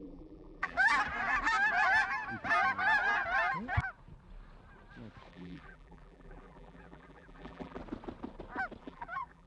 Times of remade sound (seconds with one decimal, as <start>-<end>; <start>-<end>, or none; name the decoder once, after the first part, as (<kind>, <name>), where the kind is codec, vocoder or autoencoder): 0.0-0.9 (vocoder, BigVGAN v2); 5.3-7.8; 8.8-9.5